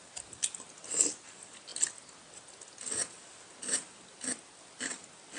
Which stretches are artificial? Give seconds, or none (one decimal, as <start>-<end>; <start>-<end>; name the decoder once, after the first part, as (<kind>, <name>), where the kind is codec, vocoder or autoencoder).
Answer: none